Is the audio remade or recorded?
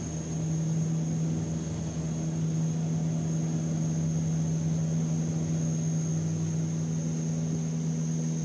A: recorded